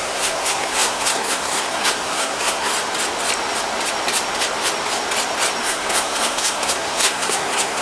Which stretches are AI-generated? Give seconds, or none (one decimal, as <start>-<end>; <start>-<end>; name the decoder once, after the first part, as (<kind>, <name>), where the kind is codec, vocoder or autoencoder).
0.0-2.7 (codec, SNAC); 5.6-7.8